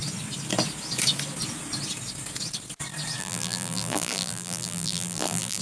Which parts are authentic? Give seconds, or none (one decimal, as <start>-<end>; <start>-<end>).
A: 0.0-3.2